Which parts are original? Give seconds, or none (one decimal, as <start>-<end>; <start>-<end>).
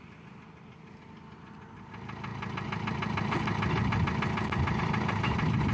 0.0-5.7